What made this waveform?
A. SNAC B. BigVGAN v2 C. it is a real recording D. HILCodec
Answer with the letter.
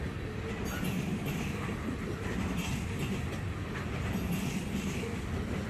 C